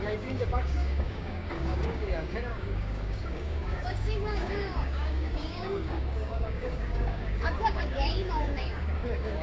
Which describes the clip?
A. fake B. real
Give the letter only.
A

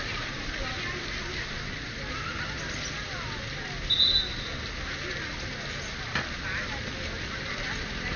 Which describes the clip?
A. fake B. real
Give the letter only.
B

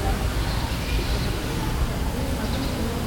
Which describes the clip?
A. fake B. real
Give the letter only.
B